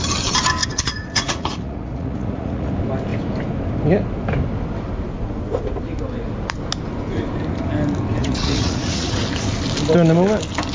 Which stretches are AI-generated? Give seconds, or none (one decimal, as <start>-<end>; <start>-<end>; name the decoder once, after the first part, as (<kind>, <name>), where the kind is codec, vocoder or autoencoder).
0.6-2.7 (vocoder, Vocos); 8.2-9.2